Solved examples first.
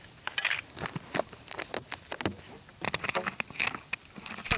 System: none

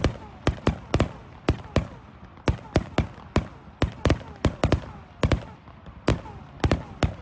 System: none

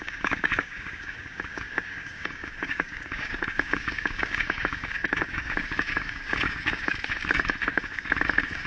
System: codec, DAC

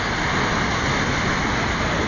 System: none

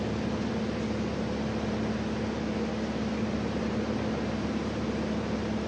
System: none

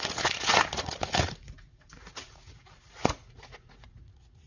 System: vocoder, Vocos